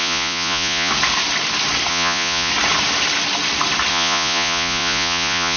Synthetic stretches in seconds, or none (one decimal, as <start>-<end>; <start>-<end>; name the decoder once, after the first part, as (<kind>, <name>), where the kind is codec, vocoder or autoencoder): 0.0-0.9 (vocoder, Vocos); 1.9-2.5; 3.9-5.6